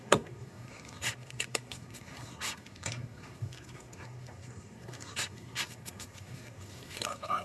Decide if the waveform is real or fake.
fake